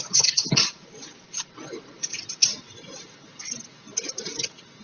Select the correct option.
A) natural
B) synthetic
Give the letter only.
A